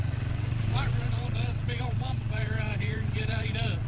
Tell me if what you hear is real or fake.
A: fake